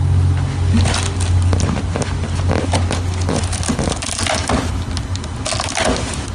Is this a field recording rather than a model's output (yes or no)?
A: yes